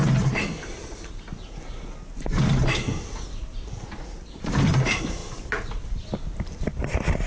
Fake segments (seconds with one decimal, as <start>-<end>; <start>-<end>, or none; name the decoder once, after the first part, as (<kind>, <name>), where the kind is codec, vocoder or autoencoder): none